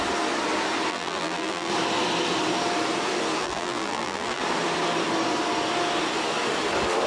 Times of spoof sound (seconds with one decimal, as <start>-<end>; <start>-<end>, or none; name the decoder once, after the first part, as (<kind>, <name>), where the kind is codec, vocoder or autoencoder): 0.9-1.7 (vocoder, BigVGAN v2); 3.4-4.4